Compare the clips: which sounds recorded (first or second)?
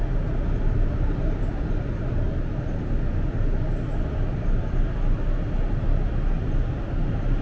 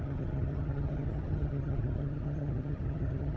first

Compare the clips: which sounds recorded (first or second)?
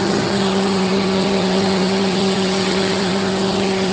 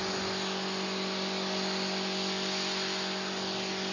second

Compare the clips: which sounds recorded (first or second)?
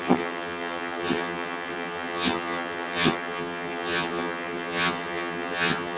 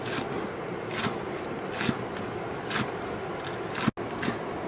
second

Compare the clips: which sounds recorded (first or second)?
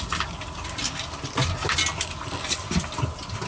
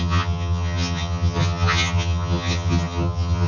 first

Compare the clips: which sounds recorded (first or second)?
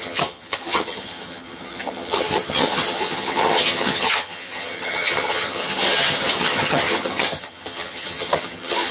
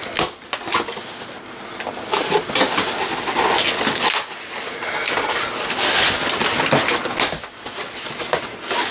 second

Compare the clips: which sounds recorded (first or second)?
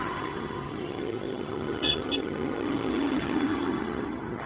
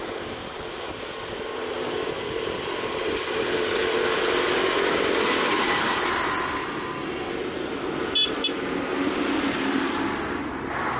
second